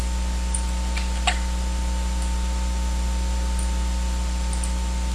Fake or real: real